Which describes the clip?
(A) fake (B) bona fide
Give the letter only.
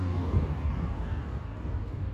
A